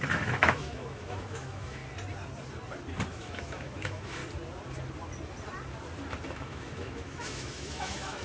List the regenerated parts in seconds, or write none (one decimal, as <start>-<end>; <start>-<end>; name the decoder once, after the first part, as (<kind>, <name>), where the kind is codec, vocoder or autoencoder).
0.0-1.8 (autoencoder, DAC-VAE); 3.1-4.2; 6.2-8.2